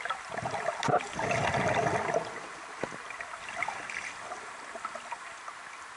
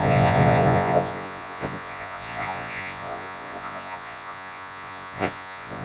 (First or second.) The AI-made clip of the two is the second